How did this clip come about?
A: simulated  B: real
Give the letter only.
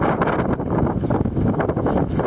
B